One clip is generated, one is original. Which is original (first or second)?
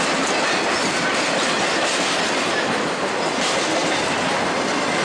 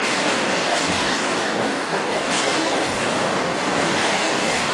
first